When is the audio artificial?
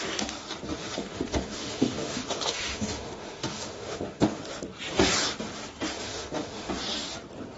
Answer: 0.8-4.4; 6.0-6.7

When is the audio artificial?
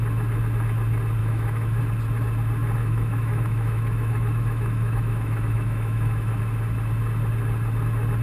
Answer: 1.2-1.8; 2.8-6.4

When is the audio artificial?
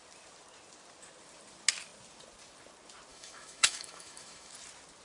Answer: 3.1-4.5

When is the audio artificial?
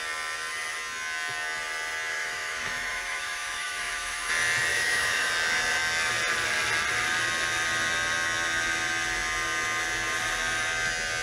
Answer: 2.1-4.3; 4.7-5.3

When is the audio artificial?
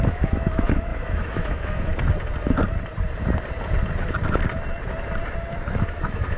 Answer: 0.0-1.9; 5.7-6.4